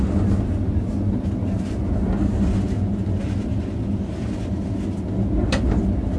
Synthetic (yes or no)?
no